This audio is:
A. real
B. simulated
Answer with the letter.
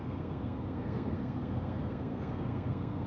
B